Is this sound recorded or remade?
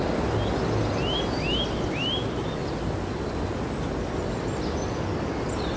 recorded